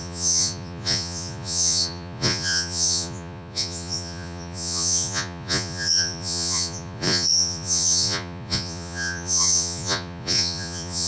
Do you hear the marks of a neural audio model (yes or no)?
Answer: yes